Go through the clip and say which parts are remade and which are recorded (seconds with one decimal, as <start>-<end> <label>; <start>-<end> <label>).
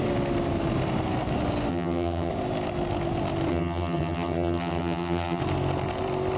0.0-1.7 recorded; 1.7-2.3 remade; 2.3-3.5 recorded; 3.5-5.4 remade; 5.4-6.4 recorded